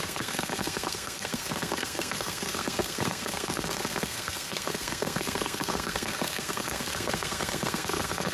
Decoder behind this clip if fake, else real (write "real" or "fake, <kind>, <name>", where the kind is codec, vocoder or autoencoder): fake, codec, SNAC